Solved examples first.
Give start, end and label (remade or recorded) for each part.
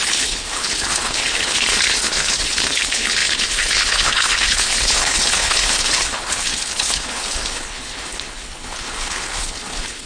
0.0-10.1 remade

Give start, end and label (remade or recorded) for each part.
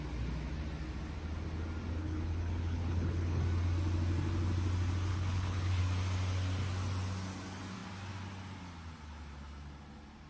0.0-2.0 recorded; 2.0-3.4 remade; 3.4-5.1 recorded; 5.1-5.8 remade; 5.8-10.3 recorded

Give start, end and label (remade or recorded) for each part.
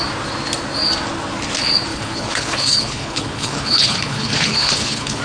0.0-1.9 recorded; 1.9-5.2 remade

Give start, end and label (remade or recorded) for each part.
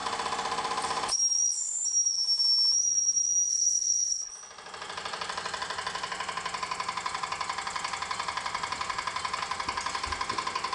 0.0-3.5 recorded; 3.5-4.3 remade; 4.3-10.7 recorded